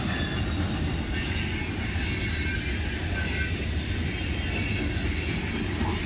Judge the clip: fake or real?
real